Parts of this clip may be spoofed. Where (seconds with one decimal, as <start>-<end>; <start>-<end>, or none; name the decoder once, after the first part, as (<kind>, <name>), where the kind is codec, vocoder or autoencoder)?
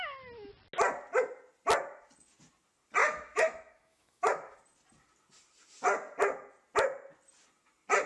3.0-4.6 (autoencoder, DAC-VAE)